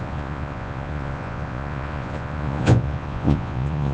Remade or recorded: remade